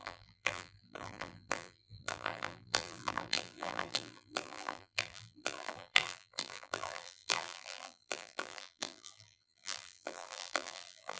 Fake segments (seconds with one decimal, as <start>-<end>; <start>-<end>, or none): 0.0-11.2